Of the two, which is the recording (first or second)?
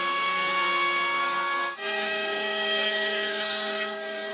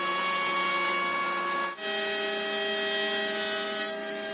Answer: second